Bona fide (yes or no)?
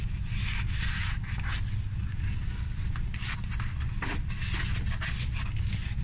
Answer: yes